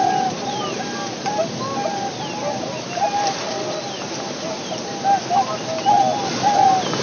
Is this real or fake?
real